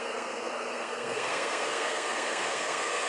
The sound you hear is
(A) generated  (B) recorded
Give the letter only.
A